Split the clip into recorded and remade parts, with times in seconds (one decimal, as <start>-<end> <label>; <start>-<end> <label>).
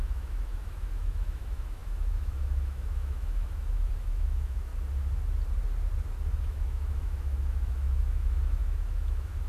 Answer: 0.0-4.7 remade; 4.7-6.4 recorded; 6.4-9.5 remade